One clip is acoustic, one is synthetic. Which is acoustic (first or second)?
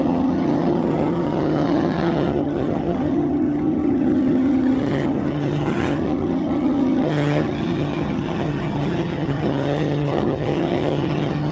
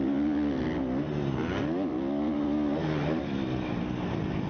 second